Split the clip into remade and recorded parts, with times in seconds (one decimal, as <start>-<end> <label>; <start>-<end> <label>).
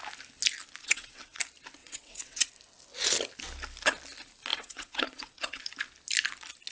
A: 0.0-0.8 recorded; 0.8-1.4 remade; 1.4-1.8 recorded; 1.8-2.5 remade; 2.5-4.5 recorded; 4.5-5.6 remade; 5.6-6.7 recorded